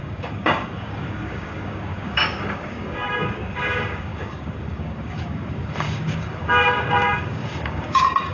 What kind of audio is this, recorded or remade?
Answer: remade